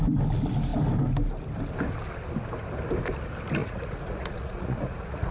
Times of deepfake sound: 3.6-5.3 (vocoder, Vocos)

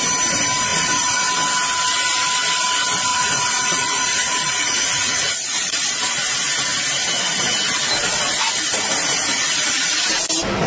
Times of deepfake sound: 0.7-1.3 (vocoder, Vocos); 3.1-6.3; 9.3-10.1

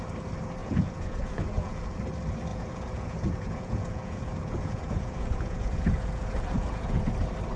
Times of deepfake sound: 0.6-2.0 (vocoder, Vocos); 2.5-7.1

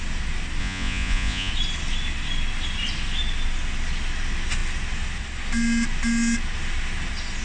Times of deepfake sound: 0.6-1.5 (vocoder, Vocos)

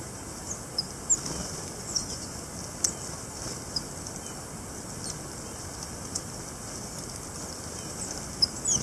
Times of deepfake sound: 1.4-2.5 (vocoder, Vocos)

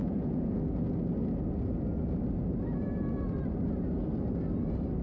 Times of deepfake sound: 0.0-0.6 (vocoder, Vocos)

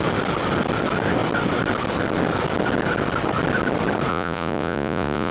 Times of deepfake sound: 4.1-5.3 (vocoder, Vocos)

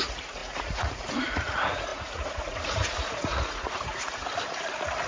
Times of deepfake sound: 0.0-4.2 (vocoder, Vocos)